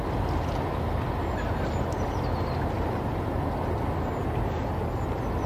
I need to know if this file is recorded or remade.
recorded